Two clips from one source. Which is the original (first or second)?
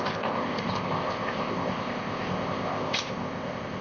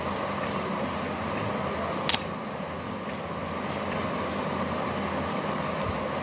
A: second